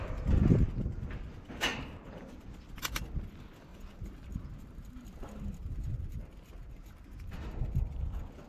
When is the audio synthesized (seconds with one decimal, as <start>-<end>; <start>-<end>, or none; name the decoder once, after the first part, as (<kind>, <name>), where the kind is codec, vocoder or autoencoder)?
3.7-7.6 (vocoder, BigVGAN v2)

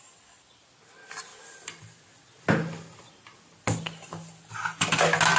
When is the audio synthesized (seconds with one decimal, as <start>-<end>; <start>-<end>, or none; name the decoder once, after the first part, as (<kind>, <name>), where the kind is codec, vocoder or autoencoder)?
none

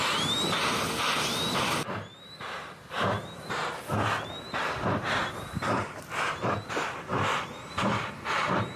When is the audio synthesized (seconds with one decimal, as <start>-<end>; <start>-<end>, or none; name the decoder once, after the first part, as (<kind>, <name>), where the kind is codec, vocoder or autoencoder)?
2.1-3.7 (vocoder, BigVGAN v2); 5.2-5.9

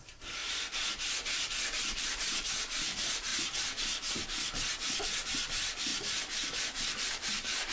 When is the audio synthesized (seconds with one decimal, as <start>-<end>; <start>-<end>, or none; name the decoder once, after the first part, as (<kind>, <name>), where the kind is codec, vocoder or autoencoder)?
0.0-5.9 (vocoder, BigVGAN v2); 6.6-7.7

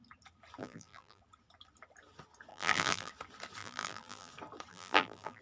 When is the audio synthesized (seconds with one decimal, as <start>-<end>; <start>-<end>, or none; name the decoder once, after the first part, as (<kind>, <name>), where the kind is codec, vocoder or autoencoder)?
0.6-1.2 (vocoder, BigVGAN v2); 2.5-3.1; 3.6-4.3; 4.7-5.4